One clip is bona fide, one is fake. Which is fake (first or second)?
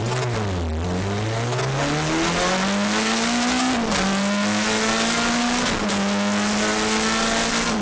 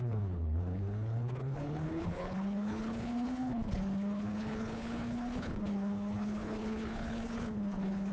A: second